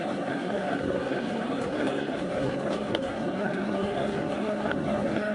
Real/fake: fake